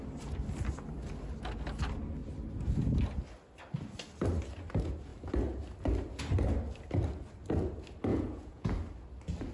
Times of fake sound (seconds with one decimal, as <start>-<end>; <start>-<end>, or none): 8.1-8.7